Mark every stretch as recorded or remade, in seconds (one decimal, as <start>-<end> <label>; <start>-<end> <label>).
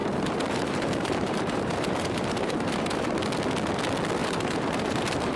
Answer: 0.0-3.2 remade; 3.2-4.2 recorded; 4.2-5.4 remade